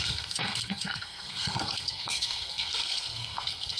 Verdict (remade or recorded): remade